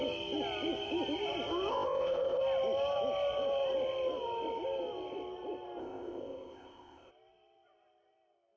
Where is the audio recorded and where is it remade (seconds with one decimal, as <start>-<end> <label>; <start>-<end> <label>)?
0.0-1.7 recorded; 1.7-2.4 remade; 2.4-5.8 recorded; 5.8-7.1 remade; 7.1-8.6 recorded